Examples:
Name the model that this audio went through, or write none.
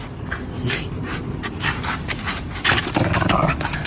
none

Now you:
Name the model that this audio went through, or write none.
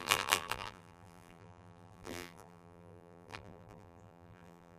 vocoder, BigVGAN v2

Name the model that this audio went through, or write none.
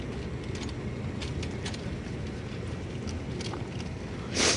none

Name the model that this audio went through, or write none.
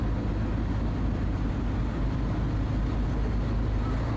none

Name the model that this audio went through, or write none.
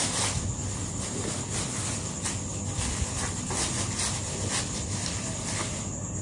none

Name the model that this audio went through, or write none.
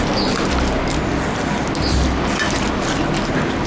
none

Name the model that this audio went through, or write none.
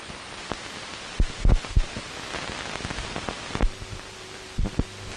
none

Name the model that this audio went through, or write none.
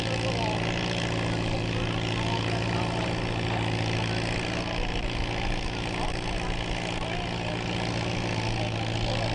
none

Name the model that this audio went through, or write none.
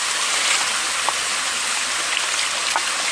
none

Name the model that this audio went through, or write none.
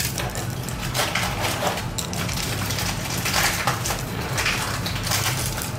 vocoder, BigVGAN v2